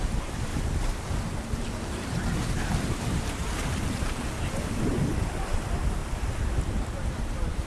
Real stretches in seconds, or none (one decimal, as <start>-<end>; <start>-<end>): 6.0-7.2